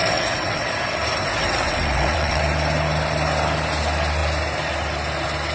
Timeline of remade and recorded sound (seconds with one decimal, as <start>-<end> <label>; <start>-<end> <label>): 0.0-0.7 remade; 0.7-1.4 recorded; 1.4-2.4 remade; 2.4-5.5 recorded